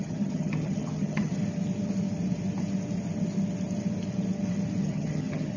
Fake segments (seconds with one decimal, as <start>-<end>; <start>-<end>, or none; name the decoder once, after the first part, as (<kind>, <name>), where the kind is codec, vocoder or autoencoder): 0.0-1.4 (vocoder, HiFi-GAN); 4.8-5.6